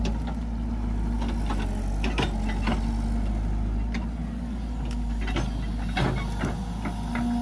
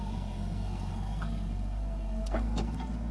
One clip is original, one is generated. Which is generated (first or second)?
second